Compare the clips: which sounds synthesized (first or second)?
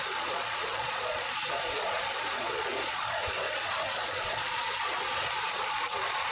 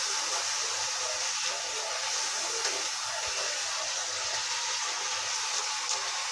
first